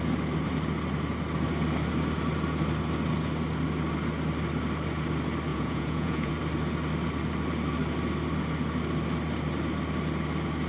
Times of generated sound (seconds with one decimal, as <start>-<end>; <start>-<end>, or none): 5.5-6.3